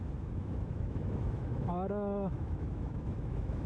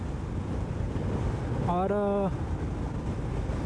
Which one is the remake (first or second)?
first